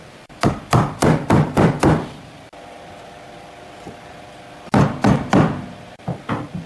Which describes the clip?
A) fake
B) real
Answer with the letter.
A